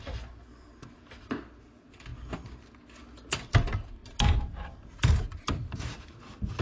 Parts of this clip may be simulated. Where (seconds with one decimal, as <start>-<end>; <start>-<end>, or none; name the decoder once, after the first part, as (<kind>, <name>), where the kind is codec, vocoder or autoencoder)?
4.0-6.6 (vocoder, BigVGAN v2)